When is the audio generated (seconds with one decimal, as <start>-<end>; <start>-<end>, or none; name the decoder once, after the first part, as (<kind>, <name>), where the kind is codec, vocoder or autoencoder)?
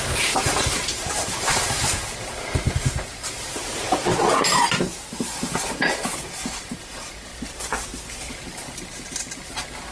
0.0-3.6 (vocoder, BigVGAN v2); 5.1-7.3; 8.3-9.9